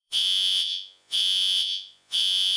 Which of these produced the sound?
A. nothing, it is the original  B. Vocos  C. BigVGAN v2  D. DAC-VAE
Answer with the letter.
B